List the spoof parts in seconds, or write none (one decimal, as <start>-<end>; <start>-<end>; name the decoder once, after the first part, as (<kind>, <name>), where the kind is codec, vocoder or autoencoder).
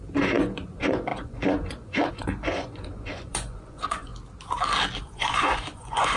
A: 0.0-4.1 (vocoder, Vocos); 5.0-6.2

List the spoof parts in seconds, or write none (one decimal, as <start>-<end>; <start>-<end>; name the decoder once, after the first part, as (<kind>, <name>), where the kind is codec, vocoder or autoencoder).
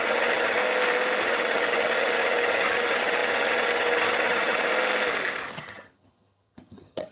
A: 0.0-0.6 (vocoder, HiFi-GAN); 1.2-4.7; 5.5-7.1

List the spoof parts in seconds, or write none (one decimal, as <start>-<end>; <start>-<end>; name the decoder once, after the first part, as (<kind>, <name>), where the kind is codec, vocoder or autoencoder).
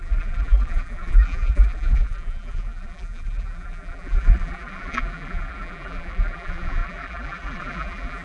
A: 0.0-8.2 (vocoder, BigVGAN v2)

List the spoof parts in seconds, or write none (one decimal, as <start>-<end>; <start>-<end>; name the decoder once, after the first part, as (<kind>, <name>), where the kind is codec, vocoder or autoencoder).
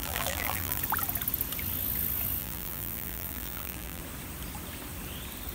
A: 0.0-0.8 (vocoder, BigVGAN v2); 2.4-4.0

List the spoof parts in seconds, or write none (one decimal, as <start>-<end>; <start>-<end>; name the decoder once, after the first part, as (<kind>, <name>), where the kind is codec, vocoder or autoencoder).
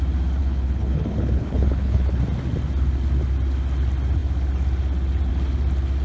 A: 0.4-2.2 (codec, HILCodec)